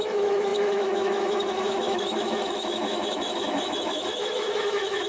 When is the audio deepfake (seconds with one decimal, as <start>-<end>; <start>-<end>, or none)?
0.0-5.1